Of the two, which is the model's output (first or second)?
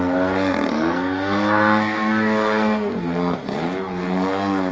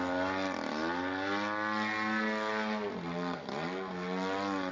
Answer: first